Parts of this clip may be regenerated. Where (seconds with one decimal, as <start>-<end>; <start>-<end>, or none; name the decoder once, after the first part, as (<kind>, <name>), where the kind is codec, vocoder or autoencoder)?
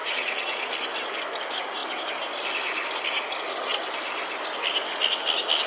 0.0-0.6 (vocoder, Vocos)